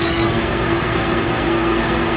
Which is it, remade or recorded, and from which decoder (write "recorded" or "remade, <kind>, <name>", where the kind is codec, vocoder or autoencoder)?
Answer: remade, codec, SNAC